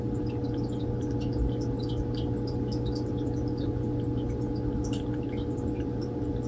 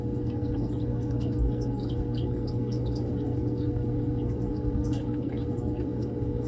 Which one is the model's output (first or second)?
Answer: second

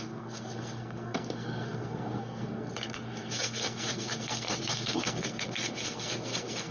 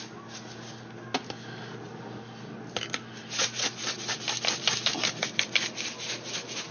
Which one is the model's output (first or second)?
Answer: first